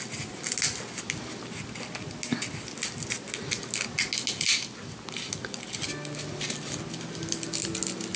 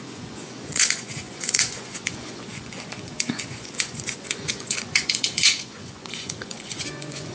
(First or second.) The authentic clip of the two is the first